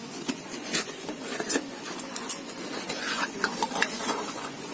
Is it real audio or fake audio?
fake